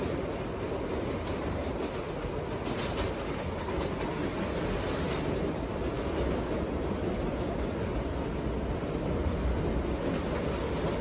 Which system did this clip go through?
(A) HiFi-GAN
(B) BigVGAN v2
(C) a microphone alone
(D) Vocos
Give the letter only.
C